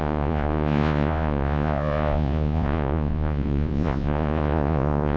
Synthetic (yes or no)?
yes